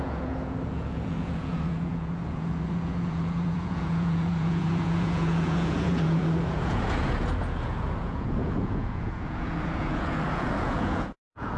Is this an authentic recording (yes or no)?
no